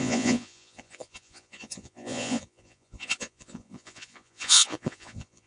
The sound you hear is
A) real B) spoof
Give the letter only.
B